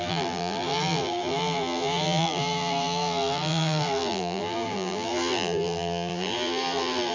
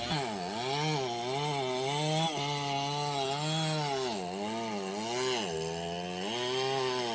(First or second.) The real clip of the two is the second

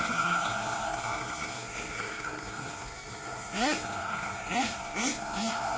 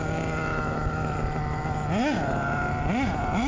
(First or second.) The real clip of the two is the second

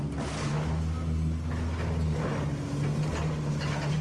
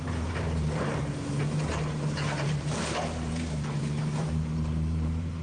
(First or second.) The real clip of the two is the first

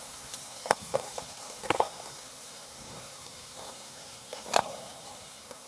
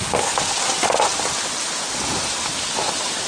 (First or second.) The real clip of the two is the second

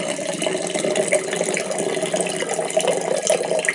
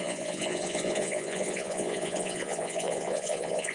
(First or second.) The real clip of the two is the first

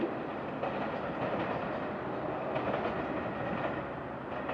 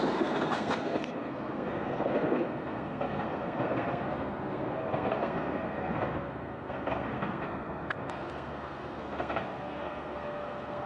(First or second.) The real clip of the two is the first